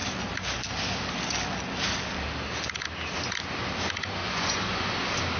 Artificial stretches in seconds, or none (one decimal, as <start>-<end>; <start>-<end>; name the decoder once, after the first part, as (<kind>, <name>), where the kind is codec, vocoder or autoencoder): 4.2-4.9 (vocoder, Vocos)